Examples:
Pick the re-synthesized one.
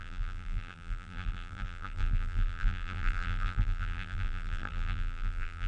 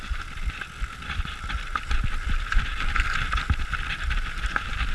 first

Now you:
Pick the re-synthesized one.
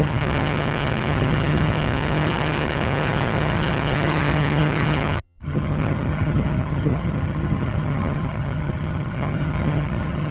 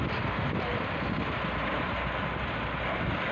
first